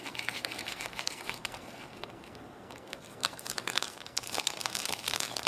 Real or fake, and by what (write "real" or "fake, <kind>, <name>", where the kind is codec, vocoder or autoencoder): fake, codec, SNAC